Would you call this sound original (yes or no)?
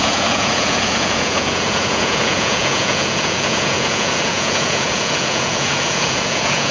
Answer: no